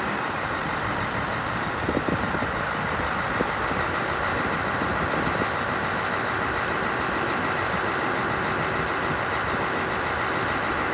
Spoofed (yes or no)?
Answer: no